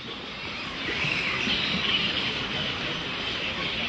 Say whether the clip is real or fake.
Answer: real